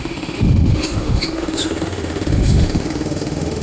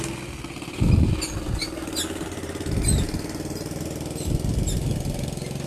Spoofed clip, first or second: first